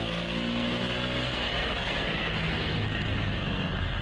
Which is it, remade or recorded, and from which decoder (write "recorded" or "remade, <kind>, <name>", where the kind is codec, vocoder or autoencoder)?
remade, codec, SNAC